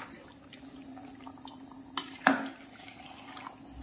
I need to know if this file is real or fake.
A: real